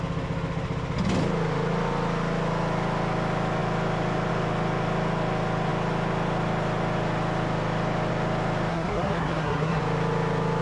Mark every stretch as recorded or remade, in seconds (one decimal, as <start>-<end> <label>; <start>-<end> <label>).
0.0-8.7 recorded; 8.7-9.8 remade; 9.8-10.6 recorded